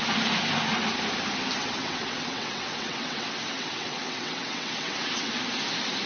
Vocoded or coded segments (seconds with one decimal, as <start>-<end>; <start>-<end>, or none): 1.6-5.3